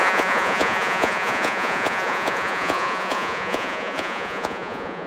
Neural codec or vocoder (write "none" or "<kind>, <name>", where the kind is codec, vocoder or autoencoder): vocoder, Vocos